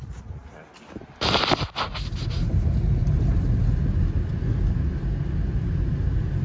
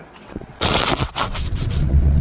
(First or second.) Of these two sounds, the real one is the first